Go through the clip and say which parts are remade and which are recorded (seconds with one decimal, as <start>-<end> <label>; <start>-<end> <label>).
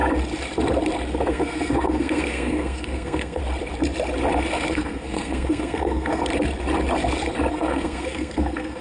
0.0-1.3 recorded; 1.3-3.4 remade; 3.4-4.7 recorded; 4.7-6.2 remade; 6.2-7.5 recorded; 7.5-8.8 remade